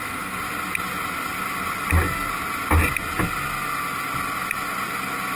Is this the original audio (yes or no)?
yes